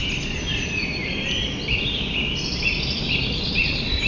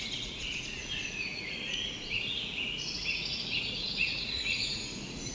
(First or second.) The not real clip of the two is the second